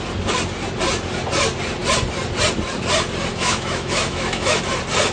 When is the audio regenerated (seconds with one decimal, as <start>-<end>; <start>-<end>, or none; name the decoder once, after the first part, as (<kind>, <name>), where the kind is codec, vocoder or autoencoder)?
3.3-4.6 (autoencoder, DAC-VAE)